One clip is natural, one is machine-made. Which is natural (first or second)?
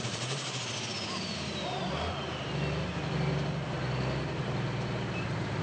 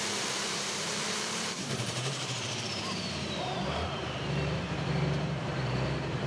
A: first